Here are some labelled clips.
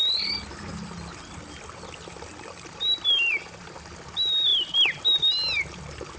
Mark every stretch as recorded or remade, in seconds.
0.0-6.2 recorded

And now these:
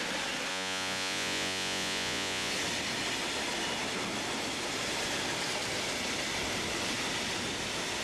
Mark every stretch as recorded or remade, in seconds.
0.0-0.5 recorded; 0.5-2.5 remade; 2.5-8.0 recorded

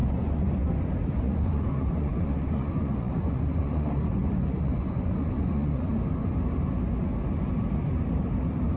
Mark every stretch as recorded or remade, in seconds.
0.0-0.7 remade; 0.7-1.1 recorded; 1.1-5.9 remade; 5.9-8.8 recorded

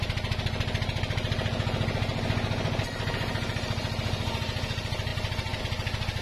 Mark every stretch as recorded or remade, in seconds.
0.0-6.2 recorded

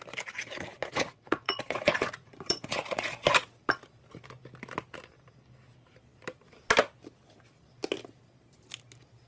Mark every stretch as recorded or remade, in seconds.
0.0-0.7 recorded; 0.7-3.1 remade; 3.1-9.3 recorded